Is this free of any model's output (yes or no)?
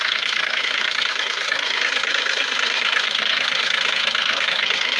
no